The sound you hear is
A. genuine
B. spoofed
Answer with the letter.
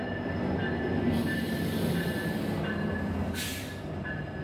A